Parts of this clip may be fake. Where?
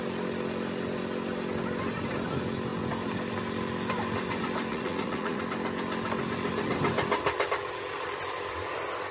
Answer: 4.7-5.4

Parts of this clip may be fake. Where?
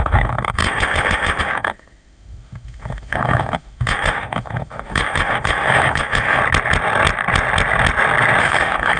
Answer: 0.0-6.4; 8.4-9.0